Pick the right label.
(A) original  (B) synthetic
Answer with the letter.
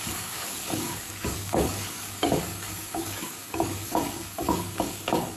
B